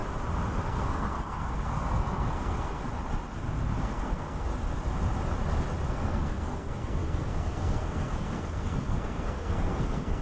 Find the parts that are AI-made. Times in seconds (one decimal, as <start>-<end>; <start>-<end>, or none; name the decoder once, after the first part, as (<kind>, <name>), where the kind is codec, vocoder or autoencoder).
0.6-2.9 (codec, SNAC); 3.8-4.5; 5.9-10.2

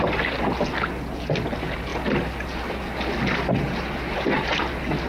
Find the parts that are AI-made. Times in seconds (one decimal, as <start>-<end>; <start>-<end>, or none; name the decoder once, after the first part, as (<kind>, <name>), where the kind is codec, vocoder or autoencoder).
none

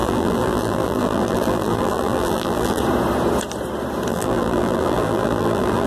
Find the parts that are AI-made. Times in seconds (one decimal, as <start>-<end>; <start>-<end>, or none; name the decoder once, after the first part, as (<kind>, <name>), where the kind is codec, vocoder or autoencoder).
0.0-2.8 (vocoder, BigVGAN v2); 4.1-5.9

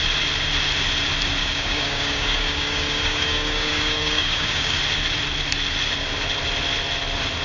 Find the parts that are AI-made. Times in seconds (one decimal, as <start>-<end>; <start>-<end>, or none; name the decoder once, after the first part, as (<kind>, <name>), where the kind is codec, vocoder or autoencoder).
1.4-4.8 (codec, DAC)

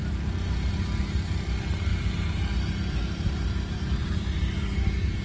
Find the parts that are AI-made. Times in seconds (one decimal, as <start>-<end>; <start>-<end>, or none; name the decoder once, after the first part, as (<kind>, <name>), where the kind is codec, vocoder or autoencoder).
1.9-5.2 (vocoder, BigVGAN v2)

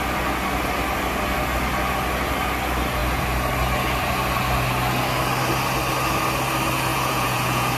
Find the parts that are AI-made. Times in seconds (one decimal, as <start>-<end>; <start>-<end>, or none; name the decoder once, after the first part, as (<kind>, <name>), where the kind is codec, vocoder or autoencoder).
6.9-7.8 (vocoder, Vocos)

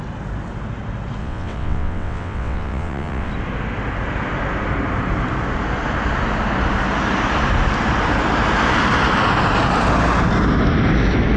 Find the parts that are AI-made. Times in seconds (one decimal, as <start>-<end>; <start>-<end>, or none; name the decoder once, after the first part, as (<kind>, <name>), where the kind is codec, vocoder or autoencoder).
1.2-3.3 (vocoder, WaveNeXt)